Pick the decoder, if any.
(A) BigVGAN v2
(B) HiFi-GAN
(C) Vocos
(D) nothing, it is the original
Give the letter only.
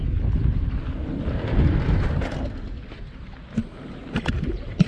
D